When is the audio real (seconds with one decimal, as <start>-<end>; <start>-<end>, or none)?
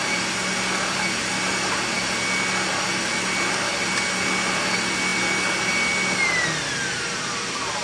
0.0-7.8